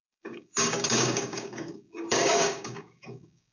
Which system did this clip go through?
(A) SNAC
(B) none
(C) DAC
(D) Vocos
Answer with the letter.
C